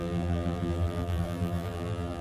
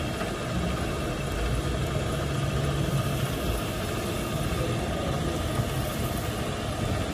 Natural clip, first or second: second